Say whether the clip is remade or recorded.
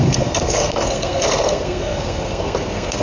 remade